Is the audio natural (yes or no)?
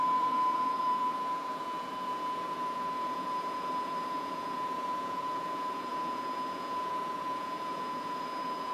no